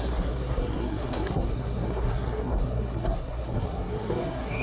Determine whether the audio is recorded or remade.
remade